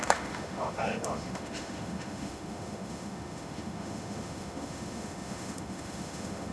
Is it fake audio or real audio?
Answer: fake